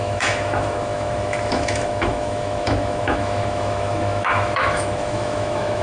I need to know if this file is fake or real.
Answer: fake